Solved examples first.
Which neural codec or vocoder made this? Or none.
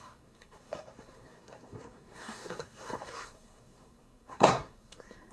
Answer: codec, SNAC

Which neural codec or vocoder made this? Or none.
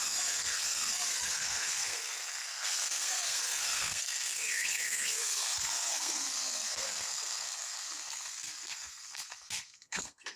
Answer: codec, SNAC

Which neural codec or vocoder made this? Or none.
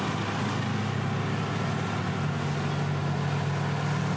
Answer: none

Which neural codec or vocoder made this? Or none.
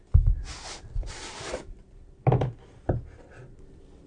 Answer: none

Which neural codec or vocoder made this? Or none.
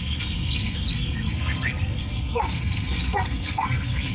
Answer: codec, SNAC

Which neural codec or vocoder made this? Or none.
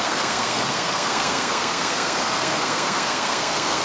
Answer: codec, SNAC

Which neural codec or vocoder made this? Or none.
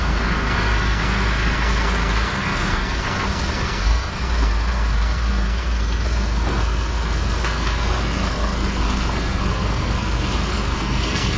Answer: codec, SNAC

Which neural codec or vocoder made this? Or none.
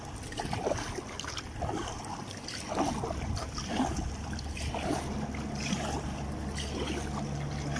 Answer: none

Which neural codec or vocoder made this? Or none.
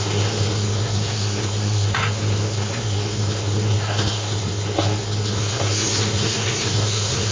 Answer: codec, SNAC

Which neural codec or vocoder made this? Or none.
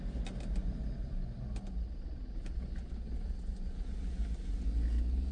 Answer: none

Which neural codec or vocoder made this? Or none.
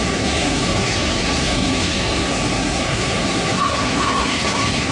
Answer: codec, SNAC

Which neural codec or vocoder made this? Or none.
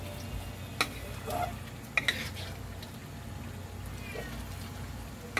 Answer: none